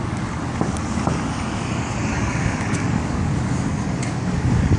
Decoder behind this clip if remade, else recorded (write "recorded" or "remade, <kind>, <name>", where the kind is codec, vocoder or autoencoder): remade, codec, DAC